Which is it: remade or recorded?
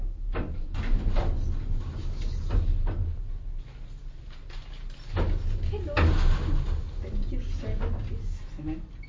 recorded